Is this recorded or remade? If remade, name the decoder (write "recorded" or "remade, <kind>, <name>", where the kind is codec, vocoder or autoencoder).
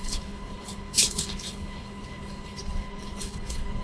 remade, codec, HILCodec